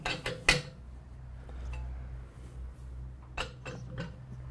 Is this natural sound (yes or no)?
yes